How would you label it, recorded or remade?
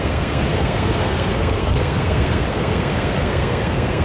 remade